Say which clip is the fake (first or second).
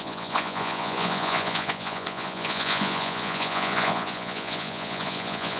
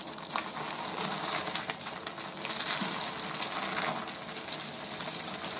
first